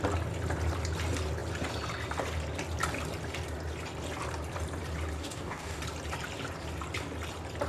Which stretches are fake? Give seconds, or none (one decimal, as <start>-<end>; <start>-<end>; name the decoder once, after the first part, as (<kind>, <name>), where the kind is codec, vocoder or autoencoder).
5.2-5.8 (codec, DAC)